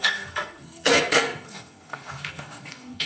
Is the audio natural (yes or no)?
no